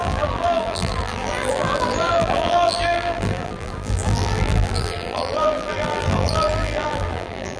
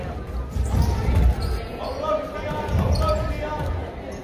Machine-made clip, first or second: first